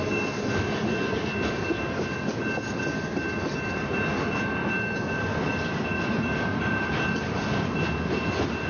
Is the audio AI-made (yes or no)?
no